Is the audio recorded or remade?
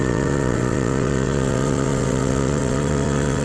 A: remade